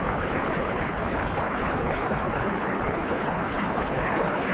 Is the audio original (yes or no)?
no